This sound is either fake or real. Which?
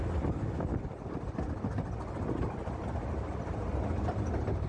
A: real